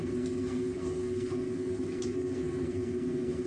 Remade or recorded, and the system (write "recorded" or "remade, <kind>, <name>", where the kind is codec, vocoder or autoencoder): remade, codec, SNAC